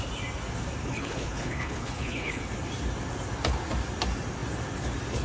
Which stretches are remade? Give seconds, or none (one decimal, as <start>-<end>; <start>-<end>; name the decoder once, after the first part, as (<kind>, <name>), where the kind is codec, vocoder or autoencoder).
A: 0.8-2.4 (codec, HILCodec)